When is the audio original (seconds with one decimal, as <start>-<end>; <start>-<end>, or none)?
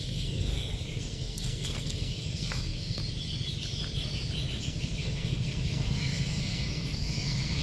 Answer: 3.0-4.6